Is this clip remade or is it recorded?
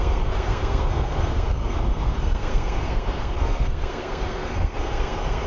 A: remade